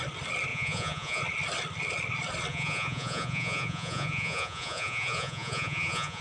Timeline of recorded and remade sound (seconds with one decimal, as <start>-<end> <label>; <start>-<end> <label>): 0.0-0.5 recorded; 0.5-1.2 remade; 1.2-2.5 recorded; 2.5-6.2 remade